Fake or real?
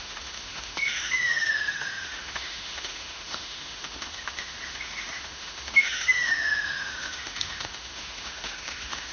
fake